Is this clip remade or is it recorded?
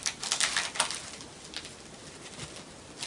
recorded